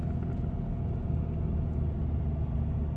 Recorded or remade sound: recorded